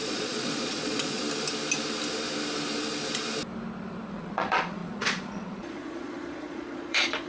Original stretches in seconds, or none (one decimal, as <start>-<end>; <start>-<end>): 1.2-4.1